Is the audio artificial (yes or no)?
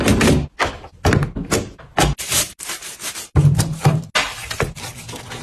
no